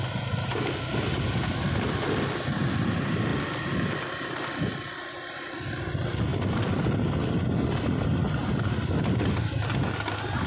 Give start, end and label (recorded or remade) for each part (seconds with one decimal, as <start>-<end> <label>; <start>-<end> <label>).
0.0-3.3 recorded; 3.3-5.4 remade; 5.4-10.5 recorded